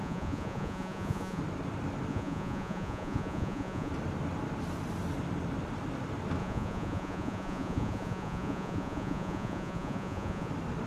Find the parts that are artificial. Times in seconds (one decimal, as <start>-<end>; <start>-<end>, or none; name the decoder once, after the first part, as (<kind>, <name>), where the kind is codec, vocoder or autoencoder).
0.0-1.4 (vocoder, Vocos); 2.1-3.9; 6.4-10.5